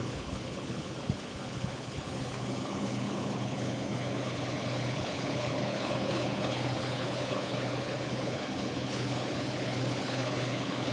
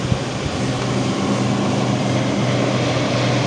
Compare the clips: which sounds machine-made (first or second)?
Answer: first